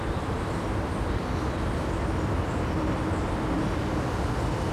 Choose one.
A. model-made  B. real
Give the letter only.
B